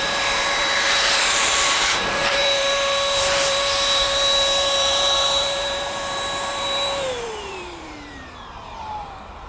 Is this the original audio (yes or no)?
no